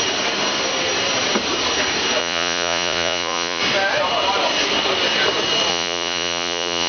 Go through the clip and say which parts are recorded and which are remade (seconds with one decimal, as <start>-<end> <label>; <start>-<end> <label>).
0.0-2.2 recorded; 2.2-3.6 remade; 3.6-5.7 recorded; 5.7-6.9 remade